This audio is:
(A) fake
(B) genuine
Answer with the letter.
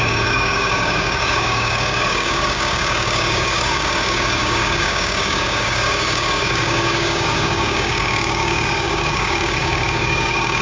A